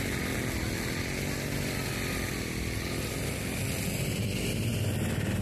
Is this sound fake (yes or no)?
no